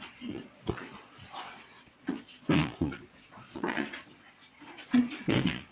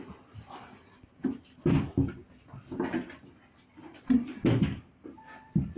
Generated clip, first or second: first